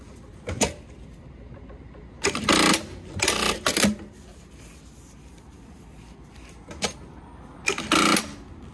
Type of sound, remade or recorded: recorded